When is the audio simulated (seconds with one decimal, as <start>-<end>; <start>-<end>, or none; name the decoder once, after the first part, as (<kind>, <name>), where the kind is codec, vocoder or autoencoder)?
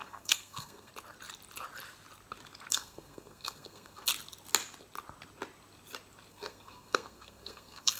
0.0-0.9 (codec, SNAC); 2.7-4.1; 6.3-8.0